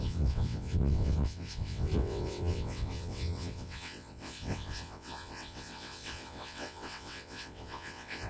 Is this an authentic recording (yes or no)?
no